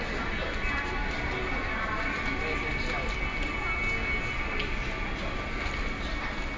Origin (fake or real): real